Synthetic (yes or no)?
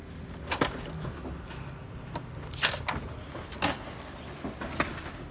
no